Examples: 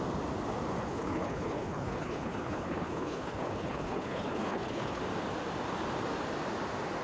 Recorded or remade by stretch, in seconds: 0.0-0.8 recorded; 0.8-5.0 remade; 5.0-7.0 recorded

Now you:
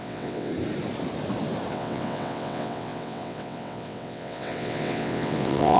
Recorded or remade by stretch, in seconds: 0.0-0.5 remade; 0.5-1.7 recorded; 1.7-5.8 remade

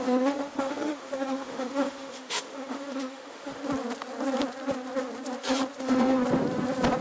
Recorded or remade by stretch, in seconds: 0.0-3.6 remade; 3.6-5.8 recorded; 5.8-6.2 remade; 6.2-7.0 recorded

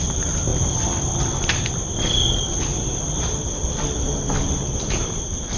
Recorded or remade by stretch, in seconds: 0.0-0.5 recorded; 0.5-1.7 remade; 1.7-2.7 recorded; 2.7-4.7 remade; 4.7-5.6 recorded

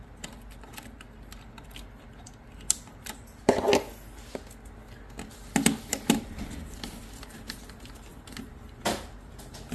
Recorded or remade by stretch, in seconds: 0.0-8.1 recorded; 8.1-9.7 remade

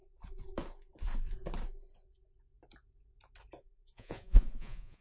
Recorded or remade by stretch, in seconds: 0.0-3.6 recorded; 3.6-5.0 remade

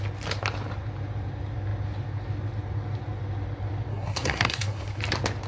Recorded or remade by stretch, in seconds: 0.0-3.9 recorded; 3.9-5.0 remade; 5.0-5.5 recorded

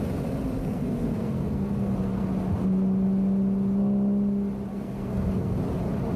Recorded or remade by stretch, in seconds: 0.0-0.6 recorded; 0.6-2.3 remade; 2.3-4.7 recorded; 4.7-5.6 remade; 5.6-6.2 recorded